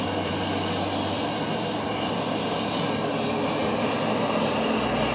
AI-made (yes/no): no